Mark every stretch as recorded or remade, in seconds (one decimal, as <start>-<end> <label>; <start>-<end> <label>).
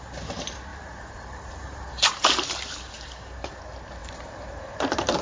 0.0-0.7 recorded; 0.7-3.6 remade; 3.6-4.0 recorded; 4.0-4.6 remade; 4.6-5.2 recorded